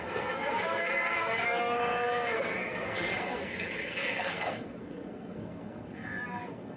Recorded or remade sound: remade